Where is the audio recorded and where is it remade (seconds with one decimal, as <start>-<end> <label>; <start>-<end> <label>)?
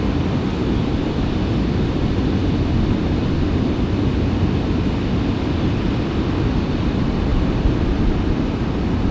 0.0-9.1 recorded